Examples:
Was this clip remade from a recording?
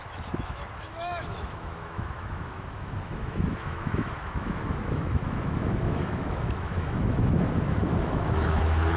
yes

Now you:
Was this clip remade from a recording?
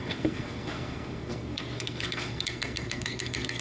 yes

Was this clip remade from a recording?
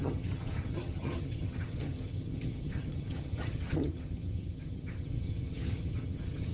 yes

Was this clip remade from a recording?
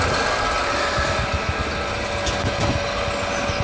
no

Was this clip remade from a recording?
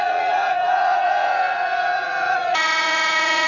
yes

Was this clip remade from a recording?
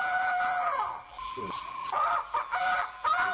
yes